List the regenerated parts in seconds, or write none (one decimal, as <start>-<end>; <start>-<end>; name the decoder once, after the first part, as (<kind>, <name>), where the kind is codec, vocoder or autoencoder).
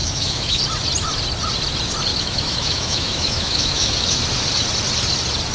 0.0-0.6 (autoencoder, DAC-VAE); 2.1-4.2